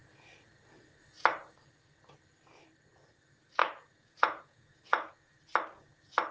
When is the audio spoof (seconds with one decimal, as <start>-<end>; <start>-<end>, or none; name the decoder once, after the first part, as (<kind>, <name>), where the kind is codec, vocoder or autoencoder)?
3.6-5.4 (vocoder, Vocos)